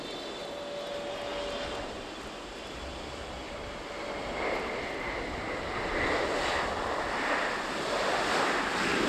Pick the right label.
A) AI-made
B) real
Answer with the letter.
B